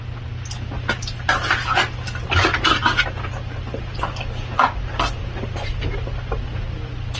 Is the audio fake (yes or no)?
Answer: no